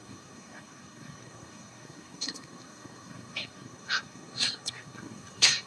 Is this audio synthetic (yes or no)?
yes